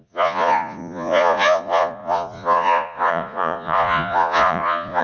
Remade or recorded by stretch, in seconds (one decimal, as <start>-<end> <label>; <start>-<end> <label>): 0.0-5.0 remade